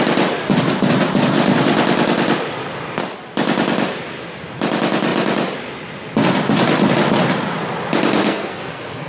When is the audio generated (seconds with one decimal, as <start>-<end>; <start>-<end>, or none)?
8.2-9.1